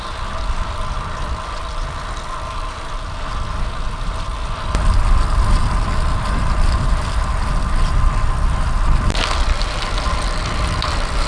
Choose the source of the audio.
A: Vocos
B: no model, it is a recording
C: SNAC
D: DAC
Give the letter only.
B